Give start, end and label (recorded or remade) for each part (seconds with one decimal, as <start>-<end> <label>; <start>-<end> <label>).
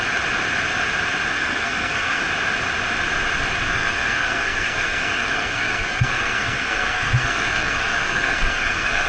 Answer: 0.0-1.3 recorded; 1.3-2.2 remade; 2.2-3.7 recorded; 3.7-9.1 remade